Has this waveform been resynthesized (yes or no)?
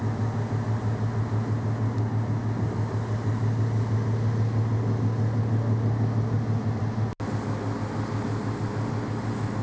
no